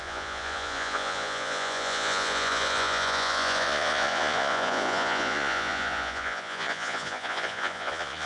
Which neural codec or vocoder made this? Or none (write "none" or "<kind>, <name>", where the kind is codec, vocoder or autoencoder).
vocoder, Vocos